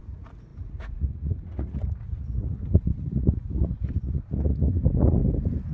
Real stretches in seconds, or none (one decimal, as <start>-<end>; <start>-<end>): 5.2-5.7